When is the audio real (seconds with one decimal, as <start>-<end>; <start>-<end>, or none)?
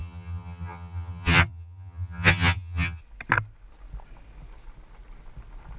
3.0-5.8